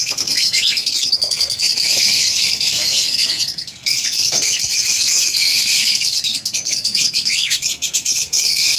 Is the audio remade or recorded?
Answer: remade